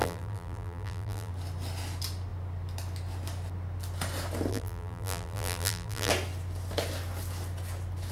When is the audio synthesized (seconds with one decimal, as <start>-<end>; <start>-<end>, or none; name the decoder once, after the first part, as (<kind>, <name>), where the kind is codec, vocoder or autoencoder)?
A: 0.0-1.3 (vocoder, BigVGAN v2); 4.5-6.1